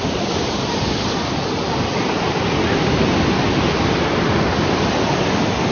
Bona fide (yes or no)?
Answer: yes